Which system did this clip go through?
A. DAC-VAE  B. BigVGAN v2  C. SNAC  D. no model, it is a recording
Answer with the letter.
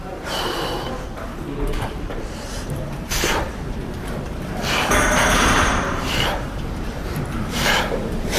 B